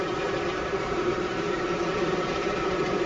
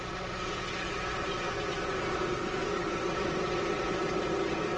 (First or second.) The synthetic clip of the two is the first